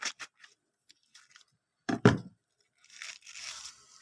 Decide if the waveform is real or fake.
fake